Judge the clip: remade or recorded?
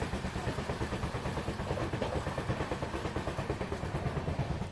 recorded